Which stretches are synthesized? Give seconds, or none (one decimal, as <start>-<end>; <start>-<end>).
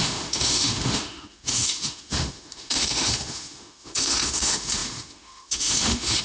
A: 0.0-6.2